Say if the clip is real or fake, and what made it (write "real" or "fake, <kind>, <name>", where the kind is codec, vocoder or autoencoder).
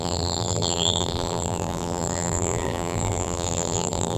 fake, vocoder, BigVGAN v2